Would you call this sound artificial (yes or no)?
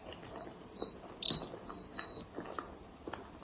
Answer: no